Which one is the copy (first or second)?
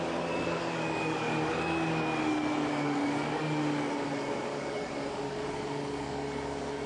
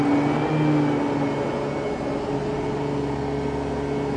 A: first